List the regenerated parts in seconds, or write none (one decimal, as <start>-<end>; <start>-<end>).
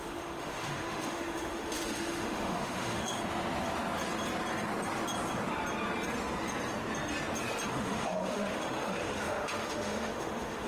0.0-3.2; 7.7-10.7